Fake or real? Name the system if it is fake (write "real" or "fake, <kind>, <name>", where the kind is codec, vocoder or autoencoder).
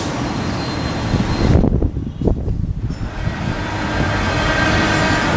real